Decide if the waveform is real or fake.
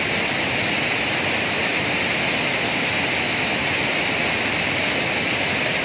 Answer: real